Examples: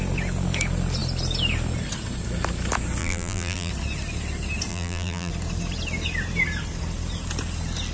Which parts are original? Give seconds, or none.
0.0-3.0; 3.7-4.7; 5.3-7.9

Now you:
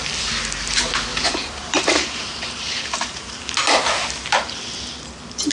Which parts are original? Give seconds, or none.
0.0-1.1; 3.4-5.5

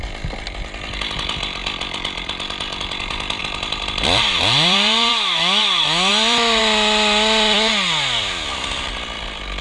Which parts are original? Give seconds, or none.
0.0-3.4; 5.1-6.1; 6.6-9.6

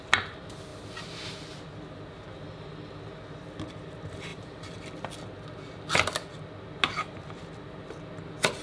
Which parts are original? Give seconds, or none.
0.0-4.3; 4.8-8.6

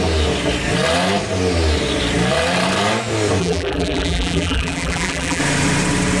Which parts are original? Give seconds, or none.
0.0-3.4; 5.4-6.2

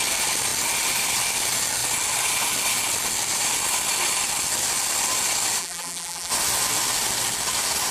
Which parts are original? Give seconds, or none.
0.0-5.6; 6.3-7.9